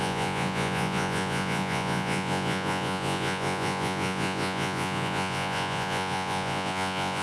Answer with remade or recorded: remade